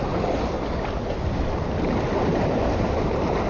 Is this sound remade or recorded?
recorded